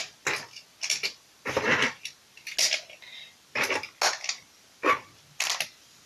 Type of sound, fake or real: real